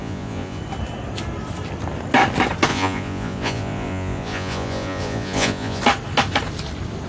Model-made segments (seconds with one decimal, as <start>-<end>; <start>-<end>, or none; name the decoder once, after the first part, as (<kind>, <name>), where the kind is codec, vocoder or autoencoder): 0.0-0.6 (vocoder, Vocos); 2.7-5.8